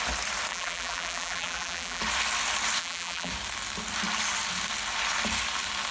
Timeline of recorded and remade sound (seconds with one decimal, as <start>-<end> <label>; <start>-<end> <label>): 0.0-0.5 recorded; 0.5-2.0 remade; 2.0-2.8 recorded; 2.8-3.3 remade; 3.3-5.9 recorded